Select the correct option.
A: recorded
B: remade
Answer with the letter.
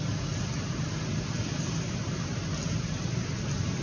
A